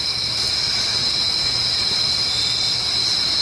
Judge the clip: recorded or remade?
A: recorded